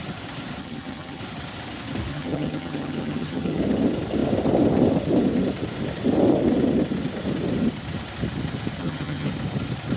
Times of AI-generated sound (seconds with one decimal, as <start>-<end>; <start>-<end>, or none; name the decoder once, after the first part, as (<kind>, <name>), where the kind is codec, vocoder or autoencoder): 0.6-1.2 (vocoder, HiFi-GAN); 2.1-3.6; 8.8-9.3